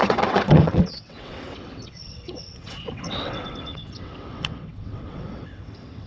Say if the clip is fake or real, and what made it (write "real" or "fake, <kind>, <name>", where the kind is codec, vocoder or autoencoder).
fake, vocoder, WaveNeXt